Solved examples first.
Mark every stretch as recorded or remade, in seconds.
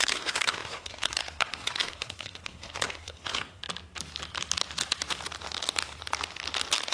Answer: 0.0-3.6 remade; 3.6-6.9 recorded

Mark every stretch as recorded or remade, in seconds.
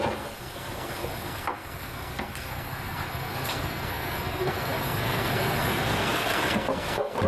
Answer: 0.0-7.3 remade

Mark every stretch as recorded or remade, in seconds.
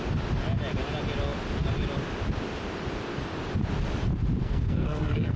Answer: 0.0-4.4 recorded; 4.4-5.4 remade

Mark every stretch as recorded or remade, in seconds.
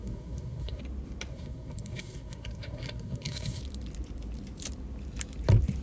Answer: 0.0-0.8 remade; 0.8-1.3 recorded; 1.3-3.6 remade; 3.6-5.8 recorded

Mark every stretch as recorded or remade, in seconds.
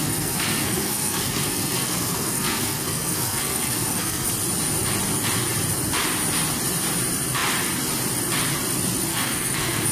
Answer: 0.0-4.3 remade; 4.3-9.1 recorded; 9.1-9.9 remade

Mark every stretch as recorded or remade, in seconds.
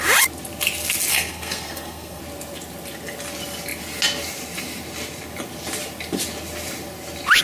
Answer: 0.0-1.1 recorded; 1.1-2.2 remade; 2.2-7.4 recorded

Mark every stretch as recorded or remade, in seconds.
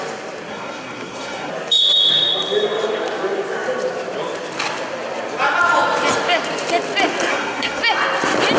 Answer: 0.0-0.5 recorded; 0.5-1.5 remade; 1.5-7.3 recorded; 7.3-7.8 remade; 7.8-8.6 recorded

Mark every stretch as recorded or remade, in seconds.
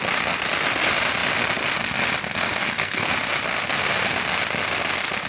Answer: 0.0-2.6 recorded; 2.6-3.1 remade; 3.1-5.3 recorded